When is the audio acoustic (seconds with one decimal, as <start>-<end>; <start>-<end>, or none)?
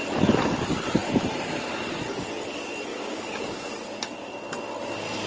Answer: 0.0-2.9; 3.7-5.3